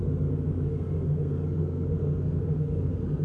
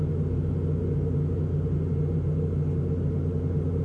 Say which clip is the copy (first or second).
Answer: first